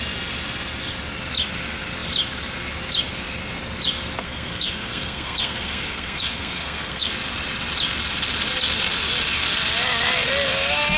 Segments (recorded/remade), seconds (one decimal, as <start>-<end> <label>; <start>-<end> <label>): 0.0-4.2 recorded; 4.2-7.1 remade; 7.1-11.0 recorded